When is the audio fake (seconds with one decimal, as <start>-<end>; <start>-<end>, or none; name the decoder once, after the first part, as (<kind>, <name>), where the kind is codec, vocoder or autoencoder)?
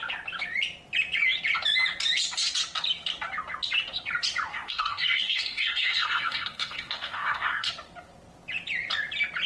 4.5-7.7 (codec, SNAC)